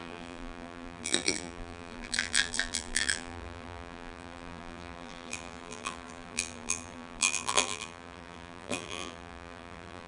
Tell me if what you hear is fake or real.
fake